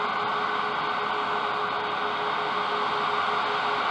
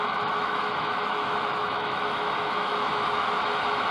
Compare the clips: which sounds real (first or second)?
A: first